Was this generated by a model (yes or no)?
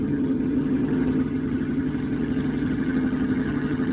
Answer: yes